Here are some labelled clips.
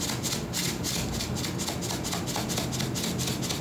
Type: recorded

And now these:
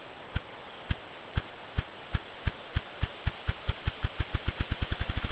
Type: recorded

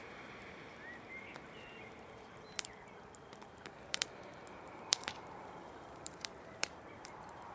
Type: remade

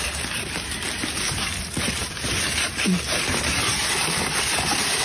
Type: remade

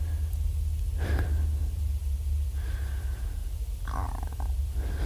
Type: recorded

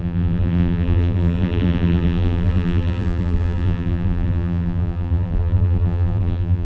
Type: remade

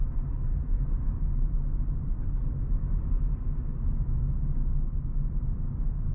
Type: remade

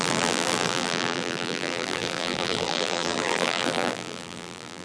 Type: remade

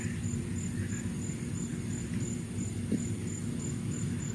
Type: recorded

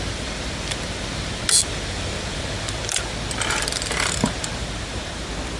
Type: remade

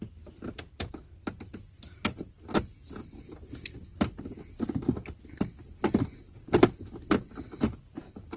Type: remade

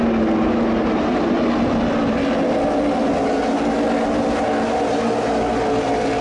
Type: recorded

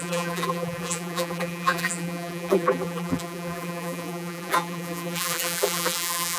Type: remade